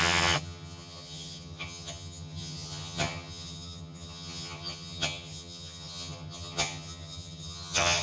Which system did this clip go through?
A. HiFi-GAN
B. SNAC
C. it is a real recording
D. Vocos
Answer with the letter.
A